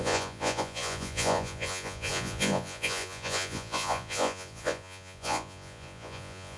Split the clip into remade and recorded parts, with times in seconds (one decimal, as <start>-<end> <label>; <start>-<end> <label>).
0.0-6.6 remade